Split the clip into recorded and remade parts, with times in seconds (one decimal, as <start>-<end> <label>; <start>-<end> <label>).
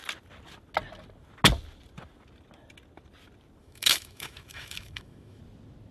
0.0-3.6 recorded; 3.6-5.4 remade; 5.4-5.9 recorded